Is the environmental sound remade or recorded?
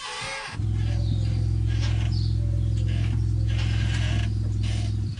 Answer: recorded